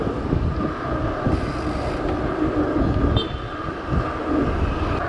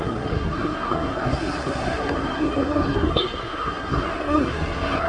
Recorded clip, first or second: first